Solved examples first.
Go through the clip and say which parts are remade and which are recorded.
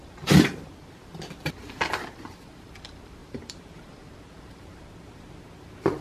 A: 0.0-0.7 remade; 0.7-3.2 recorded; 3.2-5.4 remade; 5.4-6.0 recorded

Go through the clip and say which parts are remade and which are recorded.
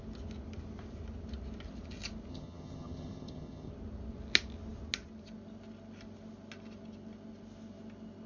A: 0.0-2.3 recorded; 2.3-3.7 remade; 3.7-8.3 recorded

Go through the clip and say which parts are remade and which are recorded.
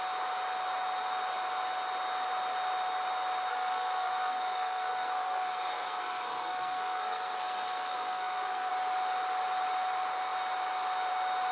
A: 0.0-3.5 recorded; 3.5-8.7 remade; 8.7-11.5 recorded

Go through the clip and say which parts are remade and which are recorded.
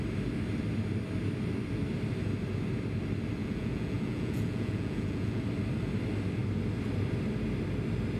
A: 0.0-3.4 recorded; 3.4-5.4 remade; 5.4-8.2 recorded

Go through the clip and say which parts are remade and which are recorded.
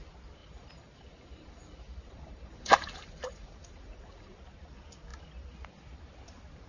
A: 0.0-0.4 recorded; 0.4-4.4 remade; 4.4-6.7 recorded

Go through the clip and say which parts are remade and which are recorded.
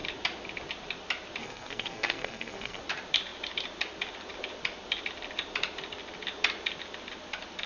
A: 0.0-1.4 recorded; 1.4-2.8 remade; 2.8-7.7 recorded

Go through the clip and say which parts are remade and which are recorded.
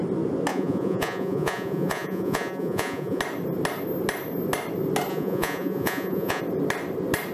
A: 0.0-0.5 recorded; 0.5-3.2 remade; 3.2-5.1 recorded; 5.1-6.4 remade; 6.4-7.3 recorded